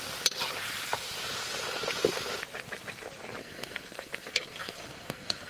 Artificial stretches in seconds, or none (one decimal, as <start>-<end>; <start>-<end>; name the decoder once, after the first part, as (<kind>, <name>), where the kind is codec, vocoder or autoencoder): 3.4-5.5 (codec, SNAC)